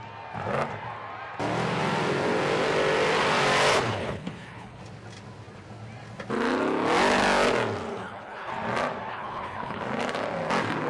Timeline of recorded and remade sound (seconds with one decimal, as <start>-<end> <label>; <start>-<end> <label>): 0.0-3.7 recorded; 3.7-4.8 remade; 4.8-7.9 recorded; 7.9-8.5 remade; 8.5-9.1 recorded; 9.1-9.8 remade; 9.8-10.9 recorded